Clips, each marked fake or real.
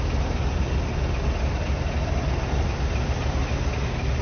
real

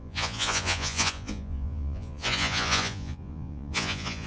fake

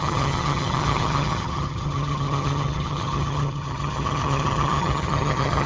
fake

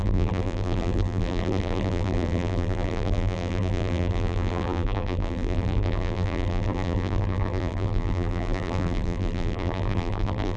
fake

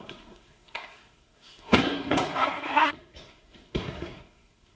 fake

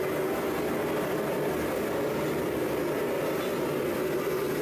real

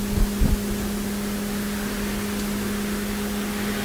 real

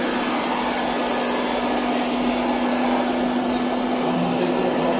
real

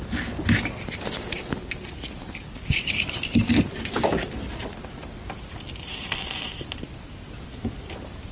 real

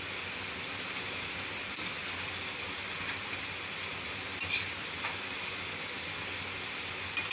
real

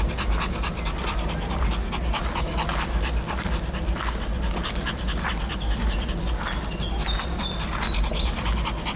real